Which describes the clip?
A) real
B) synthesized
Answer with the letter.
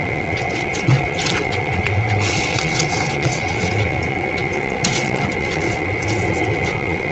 B